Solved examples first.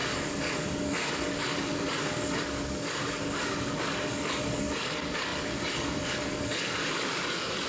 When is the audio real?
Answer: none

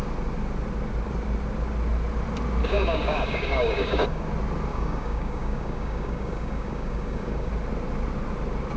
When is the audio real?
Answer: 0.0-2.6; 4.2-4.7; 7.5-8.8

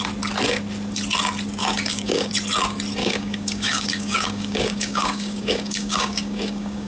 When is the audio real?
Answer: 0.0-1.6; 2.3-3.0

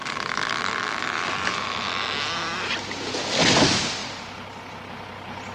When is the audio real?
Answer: 1.5-5.5

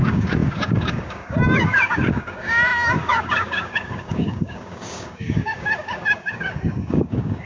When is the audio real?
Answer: none

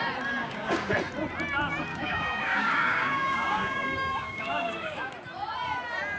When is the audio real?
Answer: 0.0-0.4; 0.9-1.9; 5.1-6.2

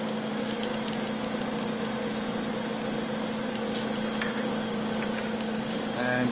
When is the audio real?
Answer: 0.7-4.5